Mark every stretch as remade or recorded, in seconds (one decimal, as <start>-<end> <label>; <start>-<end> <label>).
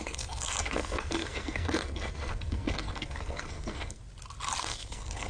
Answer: 0.0-4.0 remade; 4.0-4.6 recorded; 4.6-5.3 remade